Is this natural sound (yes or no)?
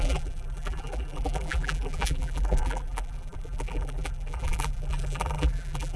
no